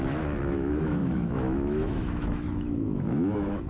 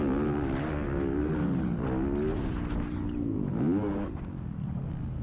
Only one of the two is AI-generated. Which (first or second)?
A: first